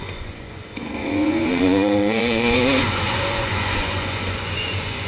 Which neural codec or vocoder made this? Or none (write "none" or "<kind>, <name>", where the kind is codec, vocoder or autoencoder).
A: vocoder, Vocos